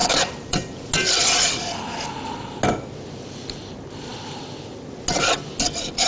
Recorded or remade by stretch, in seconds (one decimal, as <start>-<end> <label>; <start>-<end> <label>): 0.0-0.9 remade; 0.9-6.1 recorded